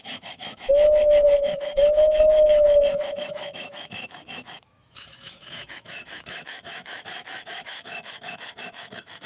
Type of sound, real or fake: fake